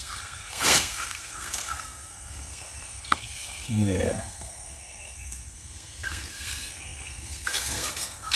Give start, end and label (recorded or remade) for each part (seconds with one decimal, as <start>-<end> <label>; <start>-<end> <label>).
0.0-8.3 remade